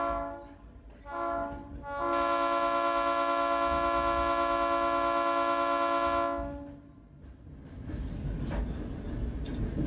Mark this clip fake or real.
real